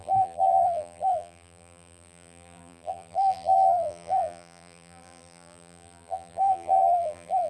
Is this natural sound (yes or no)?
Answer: no